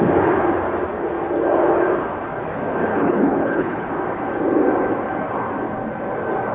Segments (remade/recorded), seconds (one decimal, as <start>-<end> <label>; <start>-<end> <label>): 0.0-2.9 recorded; 2.9-3.9 remade; 3.9-6.5 recorded